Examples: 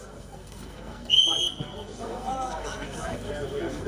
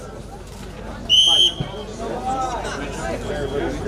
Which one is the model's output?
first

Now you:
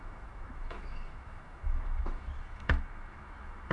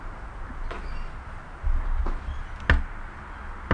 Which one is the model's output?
first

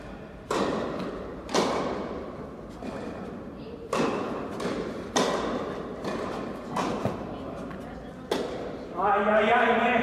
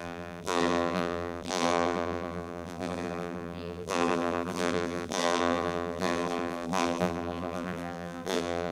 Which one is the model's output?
second